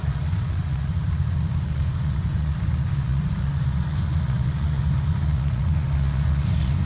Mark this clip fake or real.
fake